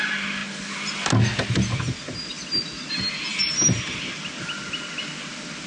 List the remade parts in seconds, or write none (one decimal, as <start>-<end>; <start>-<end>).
3.3-3.8